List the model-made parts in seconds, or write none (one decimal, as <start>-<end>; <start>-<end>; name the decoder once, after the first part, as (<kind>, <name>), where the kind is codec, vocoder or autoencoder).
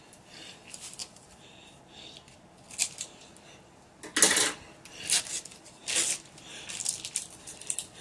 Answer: 0.0-1.0 (vocoder, BigVGAN v2); 4.9-5.8; 7.1-8.0